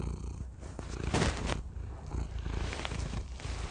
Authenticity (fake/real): fake